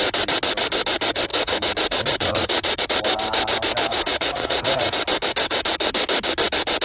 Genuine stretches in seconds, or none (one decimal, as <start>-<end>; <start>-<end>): 0.0-1.3; 2.8-3.9; 4.9-6.8